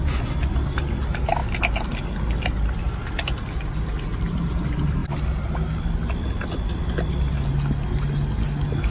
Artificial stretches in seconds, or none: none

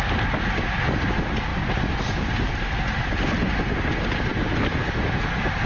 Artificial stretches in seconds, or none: none

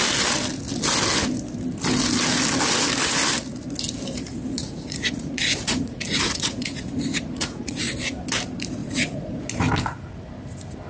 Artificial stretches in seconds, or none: 4.5-7.8 (vocoder, Vocos); 8.8-9.4

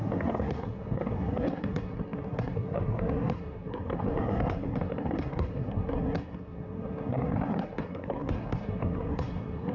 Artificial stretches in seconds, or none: 0.0-9.7 (codec, SNAC)

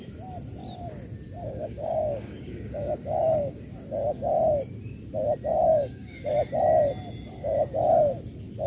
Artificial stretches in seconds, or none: 1.4-3.6 (codec, DAC); 5.7-6.3

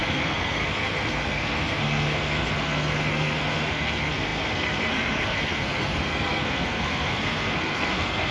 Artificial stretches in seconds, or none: 0.0-8.3 (codec, SNAC)

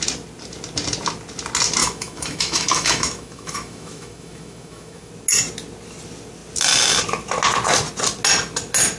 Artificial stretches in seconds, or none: 1.8-5.1 (autoencoder, DAC-VAE)